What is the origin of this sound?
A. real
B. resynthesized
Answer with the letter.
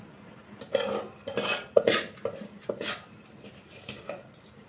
A